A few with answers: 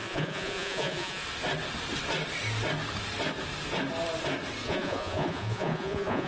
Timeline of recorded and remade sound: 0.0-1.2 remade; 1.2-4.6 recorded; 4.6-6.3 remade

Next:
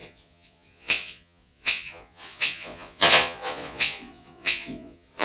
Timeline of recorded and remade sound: 0.0-5.2 remade

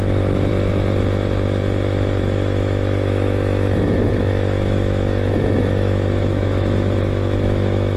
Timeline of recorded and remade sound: 0.0-0.5 remade; 0.5-2.2 recorded; 2.2-8.0 remade